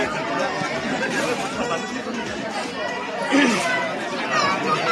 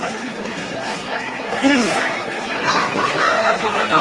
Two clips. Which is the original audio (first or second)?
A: first